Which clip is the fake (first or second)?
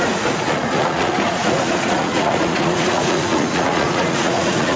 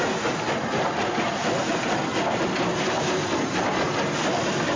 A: first